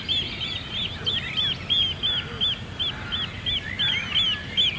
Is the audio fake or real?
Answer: real